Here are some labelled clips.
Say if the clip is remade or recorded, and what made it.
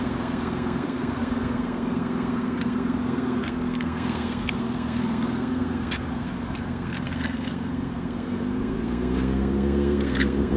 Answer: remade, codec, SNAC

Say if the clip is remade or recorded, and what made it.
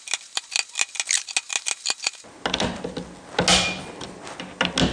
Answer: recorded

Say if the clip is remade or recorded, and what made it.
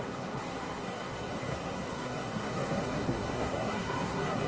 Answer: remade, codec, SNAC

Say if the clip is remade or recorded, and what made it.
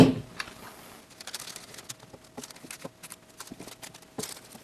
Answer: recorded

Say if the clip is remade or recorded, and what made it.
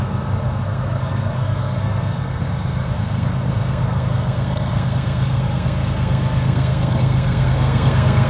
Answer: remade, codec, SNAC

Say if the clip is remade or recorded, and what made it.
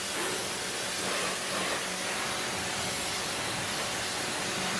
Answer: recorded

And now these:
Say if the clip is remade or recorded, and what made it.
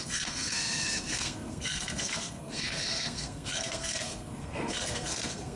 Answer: remade, codec, SNAC